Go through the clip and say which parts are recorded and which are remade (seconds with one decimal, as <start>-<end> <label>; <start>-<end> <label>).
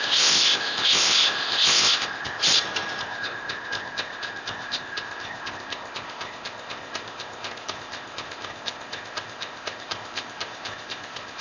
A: 0.0-2.4 remade; 2.4-3.0 recorded; 3.0-11.4 remade